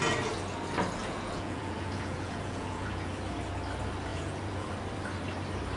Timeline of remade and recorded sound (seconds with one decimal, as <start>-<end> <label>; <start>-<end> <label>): 0.0-1.0 recorded; 1.0-3.1 remade; 3.1-4.1 recorded; 4.1-4.7 remade; 4.7-5.8 recorded